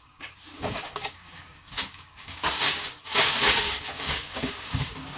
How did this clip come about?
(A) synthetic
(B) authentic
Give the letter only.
A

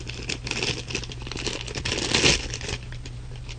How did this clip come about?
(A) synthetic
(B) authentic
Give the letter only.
B